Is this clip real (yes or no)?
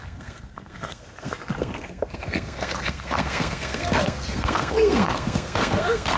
no